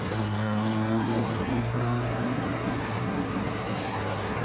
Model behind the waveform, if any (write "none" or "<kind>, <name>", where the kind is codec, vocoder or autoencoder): codec, SNAC